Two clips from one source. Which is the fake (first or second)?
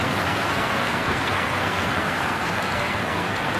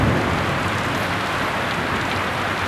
first